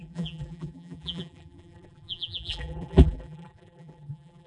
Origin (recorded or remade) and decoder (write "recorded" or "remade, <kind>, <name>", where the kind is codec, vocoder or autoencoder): remade, vocoder, BigVGAN v2